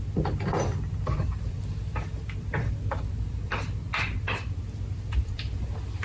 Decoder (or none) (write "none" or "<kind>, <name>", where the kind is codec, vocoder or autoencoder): none